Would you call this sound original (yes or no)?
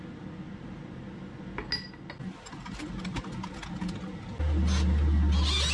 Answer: yes